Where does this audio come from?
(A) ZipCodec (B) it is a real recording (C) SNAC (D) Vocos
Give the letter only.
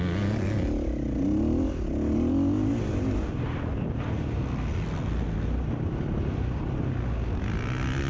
B